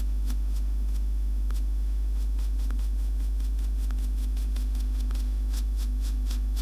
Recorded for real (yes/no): no